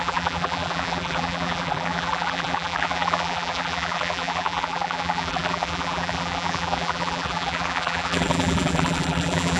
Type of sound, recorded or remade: remade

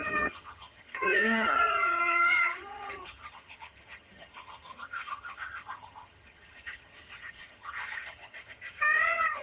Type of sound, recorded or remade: remade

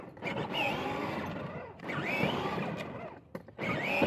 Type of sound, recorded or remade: recorded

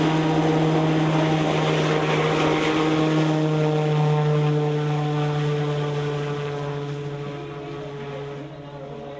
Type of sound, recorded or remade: recorded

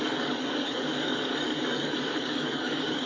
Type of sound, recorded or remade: remade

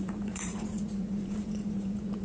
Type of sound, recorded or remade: remade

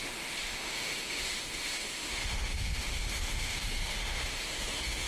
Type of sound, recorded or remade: remade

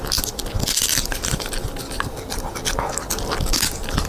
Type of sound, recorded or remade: recorded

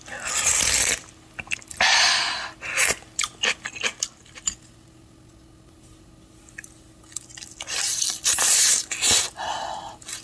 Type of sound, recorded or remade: recorded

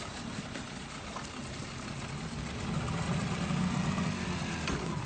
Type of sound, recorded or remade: recorded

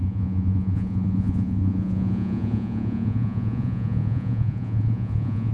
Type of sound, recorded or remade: remade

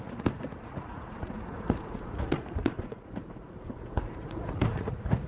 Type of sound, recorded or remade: remade